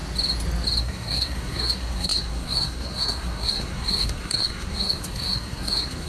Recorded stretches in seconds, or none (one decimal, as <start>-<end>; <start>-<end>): 0.0-0.8